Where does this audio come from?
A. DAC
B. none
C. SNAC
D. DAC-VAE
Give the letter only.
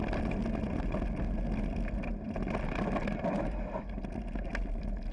B